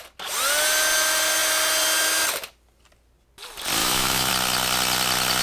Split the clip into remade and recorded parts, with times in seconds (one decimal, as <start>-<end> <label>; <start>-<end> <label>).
0.0-3.8 recorded; 3.8-4.3 remade; 4.3-5.4 recorded